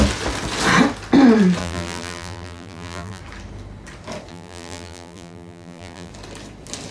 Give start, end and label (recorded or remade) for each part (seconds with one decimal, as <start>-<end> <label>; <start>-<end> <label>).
0.0-1.6 recorded; 1.6-3.2 remade; 3.2-4.3 recorded; 4.3-6.1 remade; 6.1-6.9 recorded